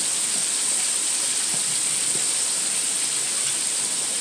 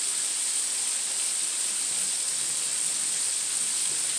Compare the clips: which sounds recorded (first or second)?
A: second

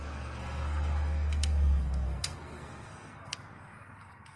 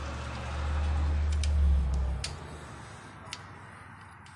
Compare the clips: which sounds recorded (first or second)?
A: second